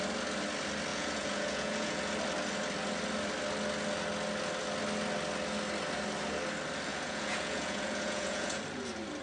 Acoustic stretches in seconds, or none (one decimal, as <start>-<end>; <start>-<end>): 0.0-0.9; 2.1-6.9; 8.6-9.2